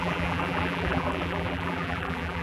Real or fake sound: fake